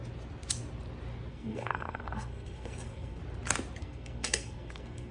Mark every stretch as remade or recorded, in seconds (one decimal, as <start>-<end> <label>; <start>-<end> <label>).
0.0-1.3 recorded; 1.3-3.2 remade; 3.2-3.8 recorded; 3.8-5.1 remade